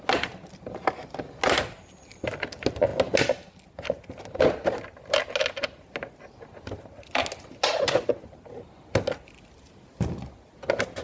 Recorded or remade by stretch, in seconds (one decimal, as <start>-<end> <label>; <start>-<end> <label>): 0.0-11.0 recorded